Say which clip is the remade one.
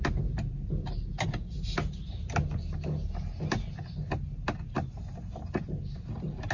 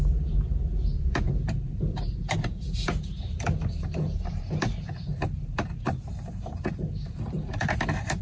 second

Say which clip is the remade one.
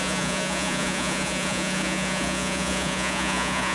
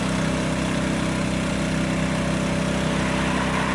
first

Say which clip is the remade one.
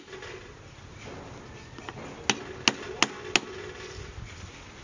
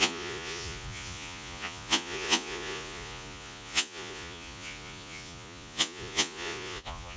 second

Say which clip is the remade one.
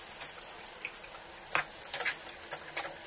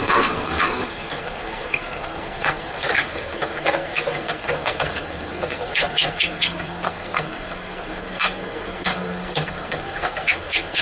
second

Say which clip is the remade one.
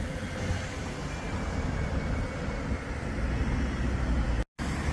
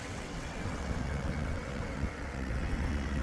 second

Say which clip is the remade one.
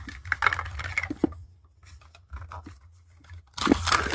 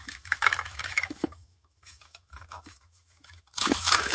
second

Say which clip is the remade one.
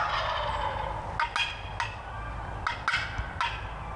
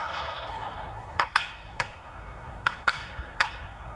second